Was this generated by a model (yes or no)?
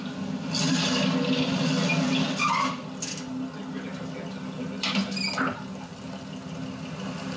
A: no